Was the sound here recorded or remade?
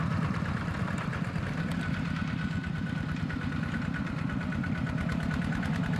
remade